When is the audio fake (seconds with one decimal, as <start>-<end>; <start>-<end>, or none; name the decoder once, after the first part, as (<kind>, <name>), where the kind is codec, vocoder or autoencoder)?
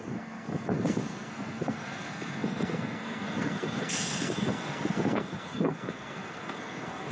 0.0-7.1 (codec, SNAC)